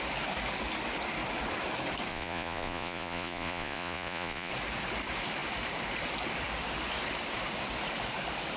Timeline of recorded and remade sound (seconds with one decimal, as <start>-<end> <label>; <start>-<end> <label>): 0.0-2.1 recorded; 2.1-4.5 remade; 4.5-8.6 recorded